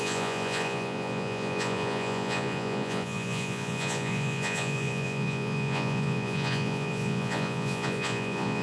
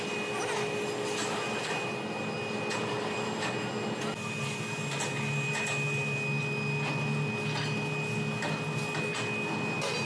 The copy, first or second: first